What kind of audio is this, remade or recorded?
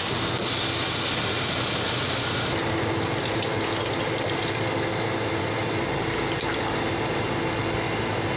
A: recorded